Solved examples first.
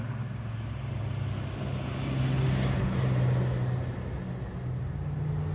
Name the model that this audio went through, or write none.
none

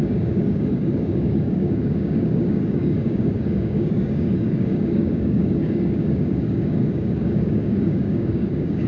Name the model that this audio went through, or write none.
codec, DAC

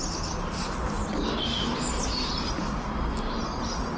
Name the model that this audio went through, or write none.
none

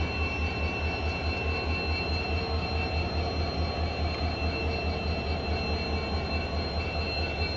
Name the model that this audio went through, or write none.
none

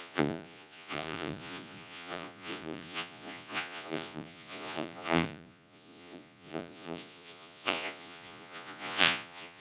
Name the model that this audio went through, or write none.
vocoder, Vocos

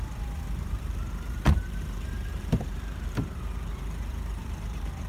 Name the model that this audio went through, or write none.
vocoder, BigVGAN v2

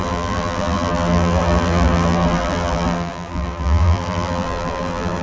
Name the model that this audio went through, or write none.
vocoder, BigVGAN v2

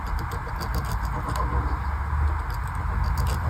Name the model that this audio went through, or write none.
none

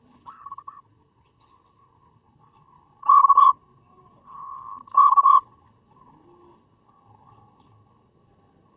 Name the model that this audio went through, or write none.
codec, HILCodec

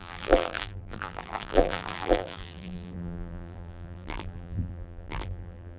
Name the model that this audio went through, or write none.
vocoder, BigVGAN v2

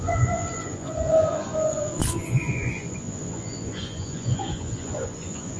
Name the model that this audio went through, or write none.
vocoder, Vocos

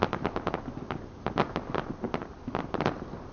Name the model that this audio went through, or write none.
none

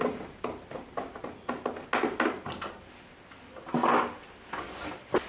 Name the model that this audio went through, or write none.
none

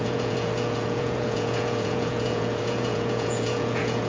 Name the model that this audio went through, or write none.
vocoder, Vocos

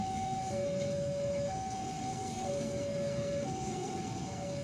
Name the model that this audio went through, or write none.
codec, SNAC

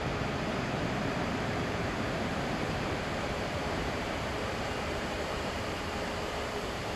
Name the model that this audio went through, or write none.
vocoder, BigVGAN v2